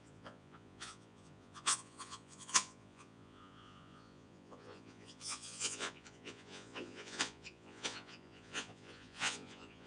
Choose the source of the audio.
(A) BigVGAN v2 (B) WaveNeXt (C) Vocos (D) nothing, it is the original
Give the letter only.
C